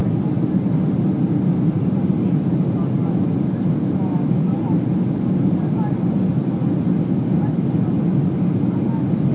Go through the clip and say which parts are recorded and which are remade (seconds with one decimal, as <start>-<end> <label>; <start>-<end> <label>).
0.0-9.3 recorded